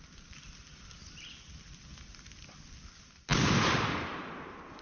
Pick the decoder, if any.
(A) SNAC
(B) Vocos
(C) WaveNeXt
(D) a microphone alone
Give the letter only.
D